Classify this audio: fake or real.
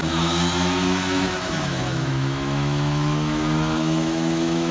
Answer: fake